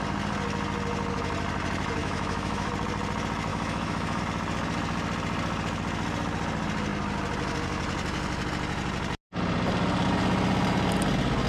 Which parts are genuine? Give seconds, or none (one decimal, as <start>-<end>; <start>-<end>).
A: 0.0-2.0; 2.7-3.5; 4.2-11.5